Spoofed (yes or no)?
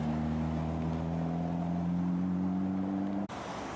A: no